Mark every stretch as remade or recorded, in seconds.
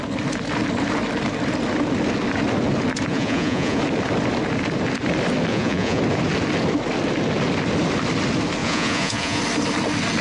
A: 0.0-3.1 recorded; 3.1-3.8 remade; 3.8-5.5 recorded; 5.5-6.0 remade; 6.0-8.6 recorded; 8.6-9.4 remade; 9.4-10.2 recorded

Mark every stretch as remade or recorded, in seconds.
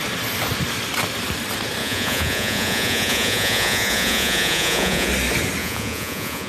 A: 0.0-1.8 recorded; 1.8-5.1 remade; 5.1-5.6 recorded; 5.6-6.5 remade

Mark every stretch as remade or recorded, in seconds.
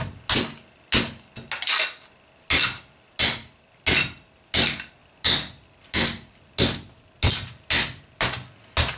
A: 0.0-9.0 recorded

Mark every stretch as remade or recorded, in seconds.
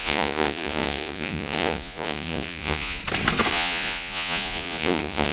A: 0.0-3.0 remade; 3.0-3.5 recorded; 3.5-5.3 remade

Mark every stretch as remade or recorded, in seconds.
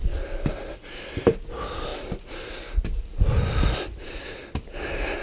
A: 0.0-5.2 recorded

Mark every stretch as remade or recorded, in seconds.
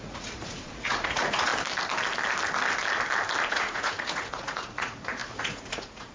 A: 0.0-1.5 remade; 1.5-3.5 recorded; 3.5-6.1 remade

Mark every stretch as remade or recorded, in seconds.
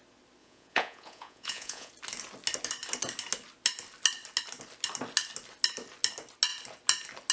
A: 0.0-0.4 recorded; 0.4-1.9 remade; 1.9-7.3 recorded